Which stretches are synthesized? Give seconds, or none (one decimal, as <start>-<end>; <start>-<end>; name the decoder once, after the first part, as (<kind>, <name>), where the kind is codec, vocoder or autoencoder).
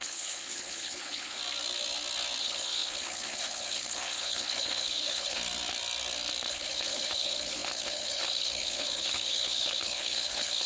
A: 0.0-1.4 (codec, HILCodec); 2.4-5.4; 6.5-10.7